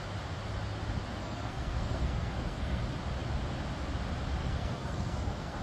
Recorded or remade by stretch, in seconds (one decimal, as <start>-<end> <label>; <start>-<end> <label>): 0.0-1.2 recorded; 1.2-2.8 remade; 2.8-4.4 recorded; 4.4-5.6 remade